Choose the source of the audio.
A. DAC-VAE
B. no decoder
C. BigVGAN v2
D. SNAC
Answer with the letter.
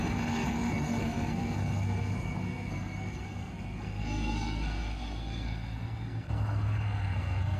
D